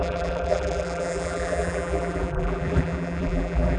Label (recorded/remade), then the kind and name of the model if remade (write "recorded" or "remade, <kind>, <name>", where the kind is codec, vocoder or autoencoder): remade, vocoder, BigVGAN v2